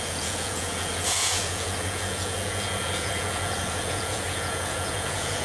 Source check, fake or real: fake